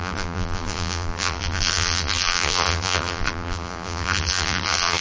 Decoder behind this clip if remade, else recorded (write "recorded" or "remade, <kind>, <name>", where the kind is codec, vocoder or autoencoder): remade, vocoder, BigVGAN v2